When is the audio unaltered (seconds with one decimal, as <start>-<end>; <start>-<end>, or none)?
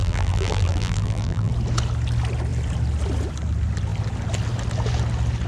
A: 1.5-5.5